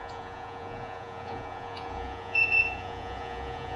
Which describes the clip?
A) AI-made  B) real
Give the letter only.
A